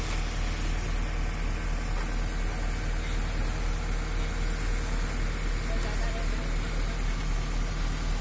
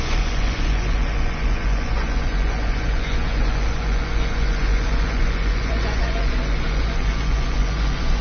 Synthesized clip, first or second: second